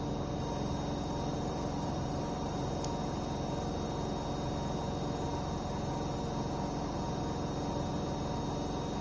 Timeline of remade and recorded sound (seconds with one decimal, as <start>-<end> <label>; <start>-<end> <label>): 0.0-1.3 recorded; 1.3-2.5 remade; 2.5-9.0 recorded